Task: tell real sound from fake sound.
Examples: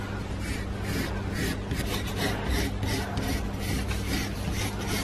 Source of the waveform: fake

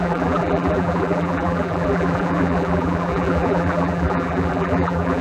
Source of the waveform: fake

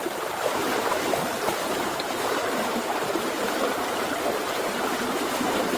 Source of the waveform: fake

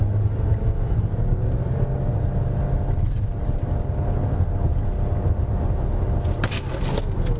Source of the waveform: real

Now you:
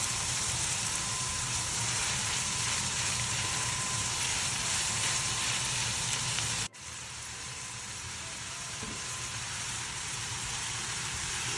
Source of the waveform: fake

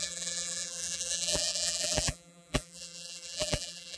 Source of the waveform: fake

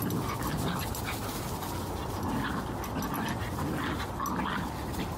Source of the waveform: real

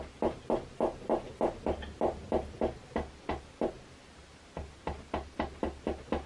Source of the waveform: real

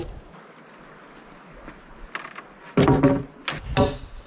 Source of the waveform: real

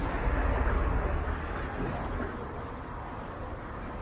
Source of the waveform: real